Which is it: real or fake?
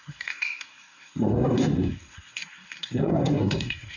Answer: fake